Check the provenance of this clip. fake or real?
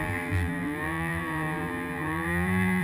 fake